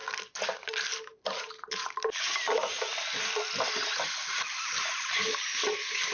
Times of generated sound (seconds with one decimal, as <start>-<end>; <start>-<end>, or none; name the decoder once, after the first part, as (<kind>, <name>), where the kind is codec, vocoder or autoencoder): none

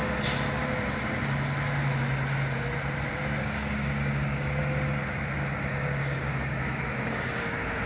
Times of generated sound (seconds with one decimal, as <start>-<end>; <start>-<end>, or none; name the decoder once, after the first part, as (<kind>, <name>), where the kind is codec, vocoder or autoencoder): 3.4-4.6 (codec, DAC); 5.7-7.9

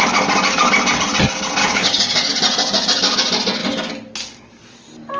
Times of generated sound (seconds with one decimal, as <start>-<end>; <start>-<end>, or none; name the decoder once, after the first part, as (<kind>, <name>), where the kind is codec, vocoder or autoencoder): 1.6-2.3 (codec, DAC)